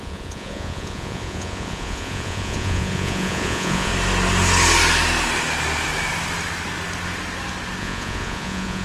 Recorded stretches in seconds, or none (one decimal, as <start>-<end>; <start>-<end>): 3.9-7.8

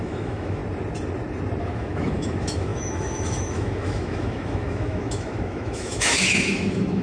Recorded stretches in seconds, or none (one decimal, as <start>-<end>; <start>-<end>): 0.6-1.6

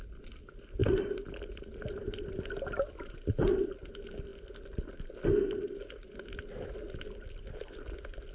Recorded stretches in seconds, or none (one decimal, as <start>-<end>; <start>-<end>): 0.0-8.3